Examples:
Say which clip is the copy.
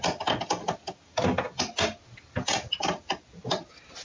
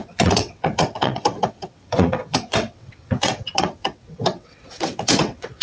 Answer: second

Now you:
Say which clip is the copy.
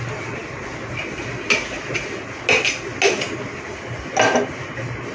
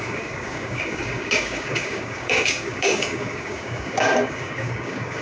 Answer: second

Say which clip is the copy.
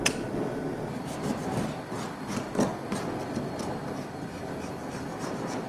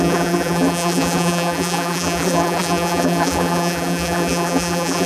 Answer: second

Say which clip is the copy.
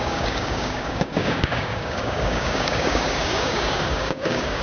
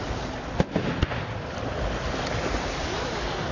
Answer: first